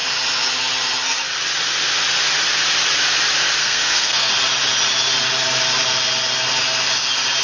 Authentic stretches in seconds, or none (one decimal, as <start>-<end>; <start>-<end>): 0.0-3.6; 4.3-7.4